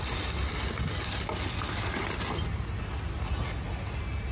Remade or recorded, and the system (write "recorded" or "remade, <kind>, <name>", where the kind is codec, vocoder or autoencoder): recorded